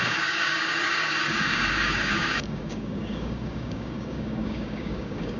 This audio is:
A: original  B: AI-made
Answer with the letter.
B